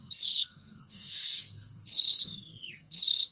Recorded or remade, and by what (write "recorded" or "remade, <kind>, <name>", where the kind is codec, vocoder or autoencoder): remade, codec, SNAC